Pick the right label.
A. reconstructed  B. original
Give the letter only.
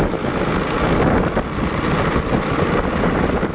B